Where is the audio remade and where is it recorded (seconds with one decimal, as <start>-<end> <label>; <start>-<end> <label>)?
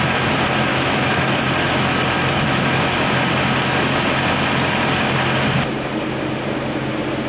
0.0-0.7 recorded; 0.7-1.4 remade; 1.4-7.3 recorded